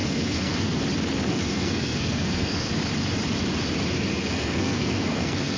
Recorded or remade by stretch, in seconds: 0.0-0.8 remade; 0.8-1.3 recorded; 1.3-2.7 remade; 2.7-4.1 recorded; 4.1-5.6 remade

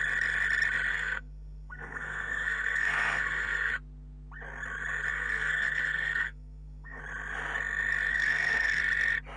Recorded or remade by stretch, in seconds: 0.0-0.9 recorded; 0.9-3.7 remade; 3.7-5.1 recorded; 5.1-7.0 remade; 7.0-8.1 recorded; 8.1-8.8 remade; 8.8-9.4 recorded

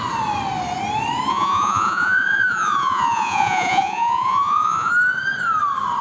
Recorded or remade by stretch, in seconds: 0.0-1.3 recorded; 1.3-4.9 remade; 4.9-6.0 recorded